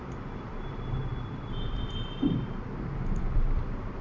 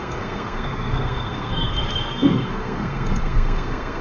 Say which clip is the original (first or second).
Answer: first